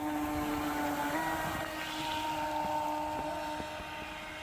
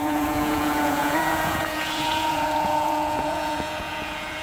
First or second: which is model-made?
second